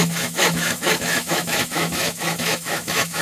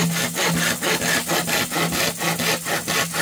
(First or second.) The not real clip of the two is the first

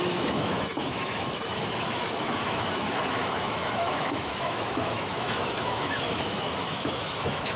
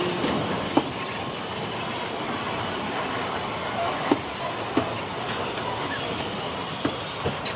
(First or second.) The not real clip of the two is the first